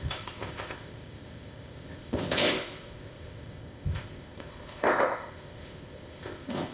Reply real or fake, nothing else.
fake